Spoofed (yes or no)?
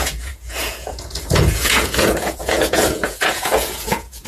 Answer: yes